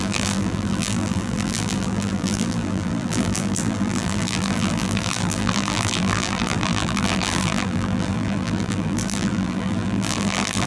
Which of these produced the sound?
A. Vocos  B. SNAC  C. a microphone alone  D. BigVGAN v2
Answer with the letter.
D